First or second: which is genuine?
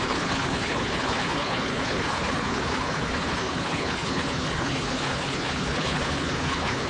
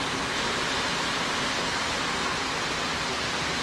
second